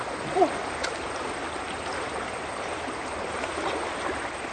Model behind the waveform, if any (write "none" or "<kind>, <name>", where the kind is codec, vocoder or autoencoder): none